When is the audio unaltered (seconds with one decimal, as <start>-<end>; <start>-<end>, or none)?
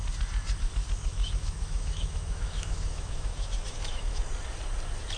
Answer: 0.0-1.1; 4.2-5.2